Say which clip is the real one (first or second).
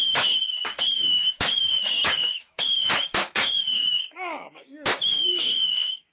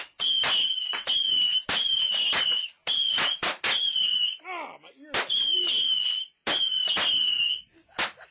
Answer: second